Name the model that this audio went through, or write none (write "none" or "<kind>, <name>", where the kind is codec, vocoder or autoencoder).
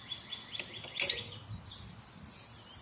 none